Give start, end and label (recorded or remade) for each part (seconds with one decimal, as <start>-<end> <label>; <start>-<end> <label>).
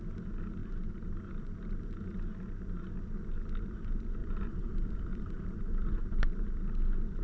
0.0-0.6 recorded; 0.6-1.1 remade; 1.1-4.2 recorded; 4.2-6.0 remade; 6.0-7.2 recorded